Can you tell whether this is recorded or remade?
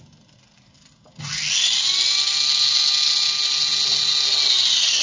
recorded